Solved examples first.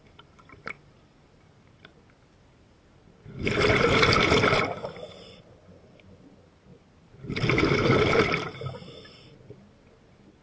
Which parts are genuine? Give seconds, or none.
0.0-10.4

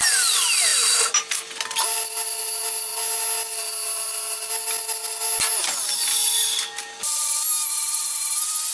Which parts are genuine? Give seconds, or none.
0.0-8.7

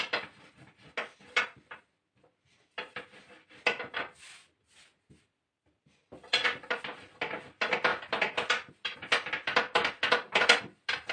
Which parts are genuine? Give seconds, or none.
0.0-11.1

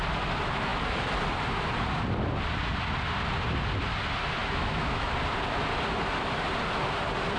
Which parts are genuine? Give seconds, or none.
0.0-4.4; 5.1-7.4